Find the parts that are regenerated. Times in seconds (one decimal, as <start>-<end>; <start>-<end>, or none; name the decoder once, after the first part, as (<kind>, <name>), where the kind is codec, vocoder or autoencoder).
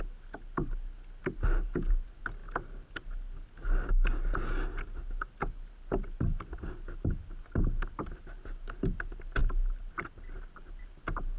none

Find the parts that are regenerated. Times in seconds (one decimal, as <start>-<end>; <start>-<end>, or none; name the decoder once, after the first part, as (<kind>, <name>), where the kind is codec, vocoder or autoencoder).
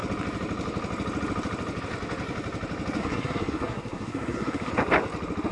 3.0-4.7 (codec, SNAC)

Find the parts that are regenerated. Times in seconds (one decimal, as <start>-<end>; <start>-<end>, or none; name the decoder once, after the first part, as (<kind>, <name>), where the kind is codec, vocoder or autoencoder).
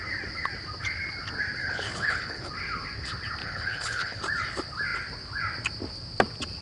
1.6-2.5 (codec, HILCodec); 3.4-4.2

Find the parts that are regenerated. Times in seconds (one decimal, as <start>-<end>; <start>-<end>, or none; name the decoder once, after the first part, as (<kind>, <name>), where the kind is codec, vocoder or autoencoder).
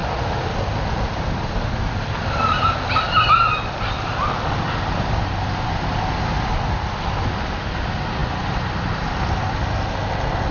none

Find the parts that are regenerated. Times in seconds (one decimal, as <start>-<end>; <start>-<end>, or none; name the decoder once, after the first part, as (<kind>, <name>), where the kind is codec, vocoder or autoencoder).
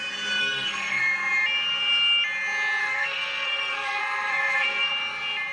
0.4-1.0 (codec, SNAC); 2.8-4.9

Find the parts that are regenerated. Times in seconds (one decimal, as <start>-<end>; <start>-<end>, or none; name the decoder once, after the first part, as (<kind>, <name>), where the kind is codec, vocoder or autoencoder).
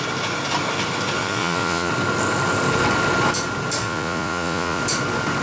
1.2-1.9 (vocoder, Vocos); 3.8-4.8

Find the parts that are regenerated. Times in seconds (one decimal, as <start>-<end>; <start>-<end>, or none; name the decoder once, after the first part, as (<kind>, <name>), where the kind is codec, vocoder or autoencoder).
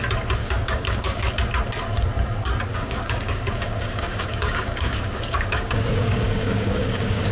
0.4-1.3 (codec, DAC); 2.7-7.3